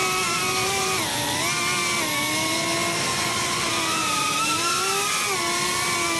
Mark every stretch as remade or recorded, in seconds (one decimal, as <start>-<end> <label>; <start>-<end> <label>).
0.0-3.1 recorded; 3.1-3.7 remade; 3.7-6.2 recorded